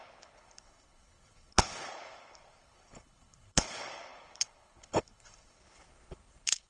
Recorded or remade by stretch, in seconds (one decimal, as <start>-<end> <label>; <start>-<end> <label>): 0.0-6.7 remade